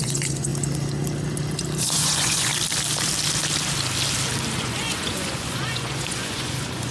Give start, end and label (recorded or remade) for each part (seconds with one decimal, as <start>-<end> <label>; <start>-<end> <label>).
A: 0.0-0.5 remade; 0.5-1.9 recorded; 1.9-2.5 remade; 2.5-4.6 recorded; 4.6-6.9 remade